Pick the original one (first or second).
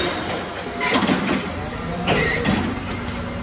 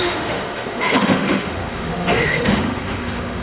first